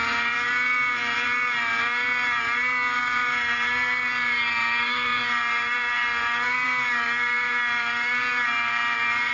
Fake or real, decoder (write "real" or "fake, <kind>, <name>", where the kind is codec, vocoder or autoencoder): fake, vocoder, BigVGAN v2